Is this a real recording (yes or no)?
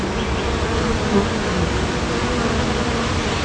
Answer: yes